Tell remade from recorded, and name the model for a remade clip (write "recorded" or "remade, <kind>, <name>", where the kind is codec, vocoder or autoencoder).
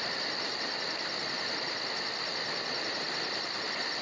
recorded